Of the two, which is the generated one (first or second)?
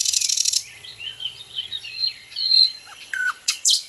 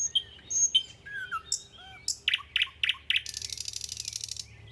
first